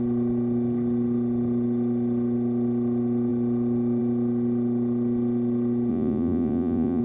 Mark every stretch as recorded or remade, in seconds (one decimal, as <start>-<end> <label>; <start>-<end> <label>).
0.0-5.9 recorded; 5.9-7.0 remade